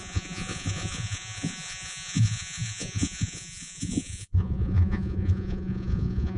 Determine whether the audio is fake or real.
fake